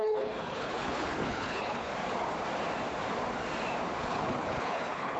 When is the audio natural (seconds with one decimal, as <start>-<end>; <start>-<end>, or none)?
1.9-4.0

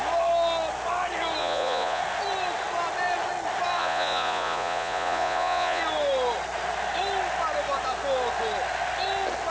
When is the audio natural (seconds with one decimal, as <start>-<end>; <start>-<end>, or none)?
0.0-1.4; 2.0-3.8; 5.8-9.5

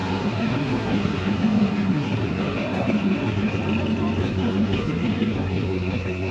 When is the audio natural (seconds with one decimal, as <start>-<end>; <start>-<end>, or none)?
3.6-4.2

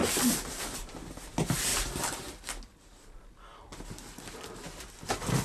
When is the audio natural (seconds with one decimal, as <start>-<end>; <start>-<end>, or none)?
0.0-5.4

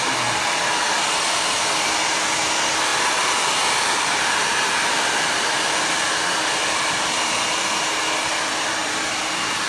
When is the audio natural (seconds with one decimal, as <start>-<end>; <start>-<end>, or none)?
0.0-2.9; 5.4-8.8